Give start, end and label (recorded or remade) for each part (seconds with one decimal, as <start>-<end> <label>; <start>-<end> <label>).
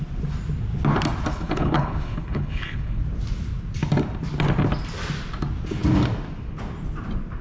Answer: 0.0-1.3 recorded; 1.3-3.0 remade; 3.0-7.4 recorded